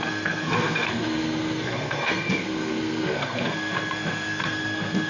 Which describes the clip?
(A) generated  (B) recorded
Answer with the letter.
A